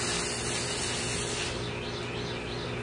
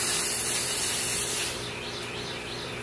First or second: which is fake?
second